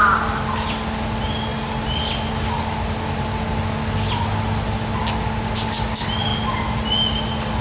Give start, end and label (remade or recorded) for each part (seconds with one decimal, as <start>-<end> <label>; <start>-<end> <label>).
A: 0.0-7.6 recorded